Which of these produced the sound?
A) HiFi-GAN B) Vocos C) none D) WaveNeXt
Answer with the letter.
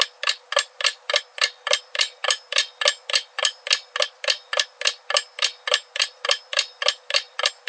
C